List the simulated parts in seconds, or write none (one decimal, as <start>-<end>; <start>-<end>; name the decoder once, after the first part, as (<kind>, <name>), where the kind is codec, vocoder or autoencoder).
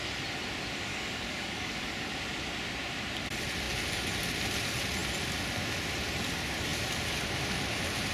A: 0.9-2.1 (codec, DAC)